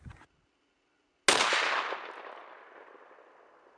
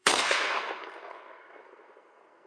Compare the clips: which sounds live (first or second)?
first